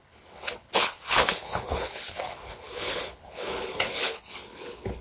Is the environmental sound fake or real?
fake